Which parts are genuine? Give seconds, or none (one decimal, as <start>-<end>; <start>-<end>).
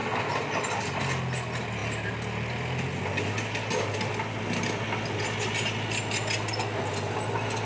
0.0-7.7